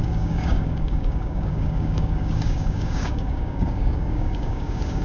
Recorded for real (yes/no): no